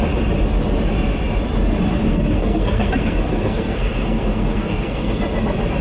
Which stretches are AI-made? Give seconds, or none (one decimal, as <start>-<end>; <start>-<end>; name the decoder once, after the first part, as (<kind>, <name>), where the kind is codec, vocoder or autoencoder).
2.1-5.2 (codec, SNAC)